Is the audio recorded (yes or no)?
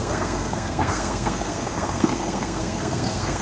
no